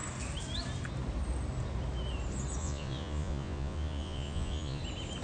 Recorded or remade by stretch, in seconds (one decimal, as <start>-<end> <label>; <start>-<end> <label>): 0.0-2.6 recorded; 2.6-4.8 remade; 4.8-5.2 recorded